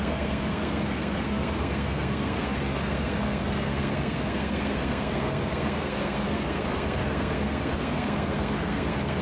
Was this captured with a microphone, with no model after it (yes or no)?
no